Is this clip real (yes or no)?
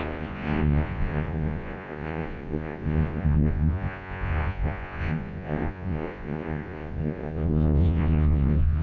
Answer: no